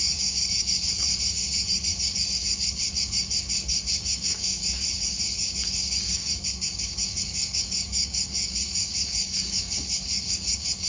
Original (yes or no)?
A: no